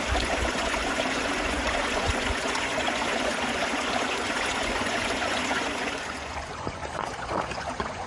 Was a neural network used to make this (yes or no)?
yes